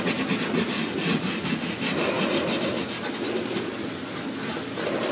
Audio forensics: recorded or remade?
recorded